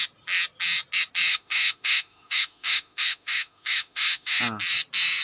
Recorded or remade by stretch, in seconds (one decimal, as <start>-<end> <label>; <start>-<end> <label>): 0.0-1.3 recorded; 1.3-4.4 remade; 4.4-5.2 recorded